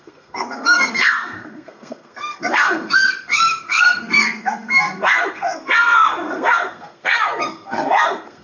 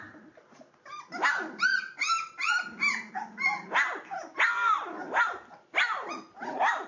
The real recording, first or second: second